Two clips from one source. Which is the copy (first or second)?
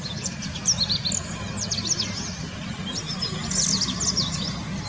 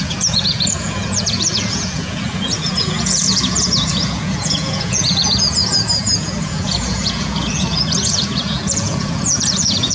second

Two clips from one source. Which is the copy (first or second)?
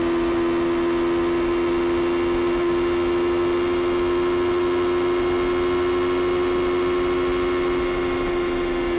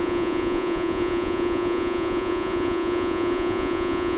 second